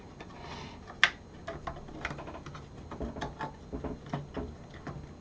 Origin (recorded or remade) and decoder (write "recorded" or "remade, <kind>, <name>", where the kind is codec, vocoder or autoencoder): recorded